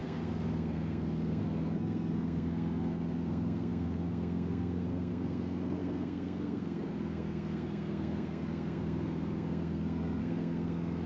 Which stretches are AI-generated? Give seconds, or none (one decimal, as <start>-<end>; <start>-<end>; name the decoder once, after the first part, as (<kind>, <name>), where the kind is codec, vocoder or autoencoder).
0.0-11.1 (codec, SNAC)